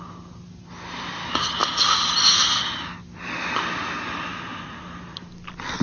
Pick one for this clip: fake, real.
real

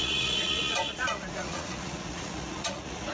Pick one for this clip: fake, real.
fake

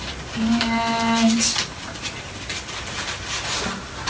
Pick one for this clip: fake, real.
real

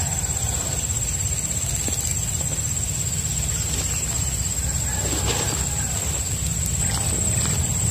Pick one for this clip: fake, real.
real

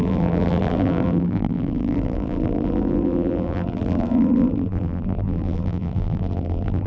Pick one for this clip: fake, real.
fake